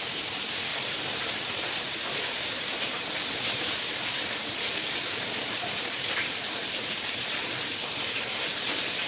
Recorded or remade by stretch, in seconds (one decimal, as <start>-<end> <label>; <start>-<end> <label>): 0.0-0.7 recorded; 0.7-5.0 remade; 5.0-6.2 recorded; 6.2-9.1 remade